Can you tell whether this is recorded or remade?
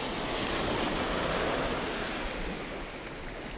recorded